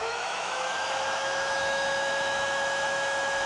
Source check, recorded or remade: remade